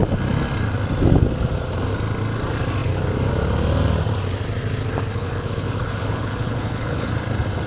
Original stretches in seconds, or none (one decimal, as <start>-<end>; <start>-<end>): 0.0-5.1; 7.1-7.7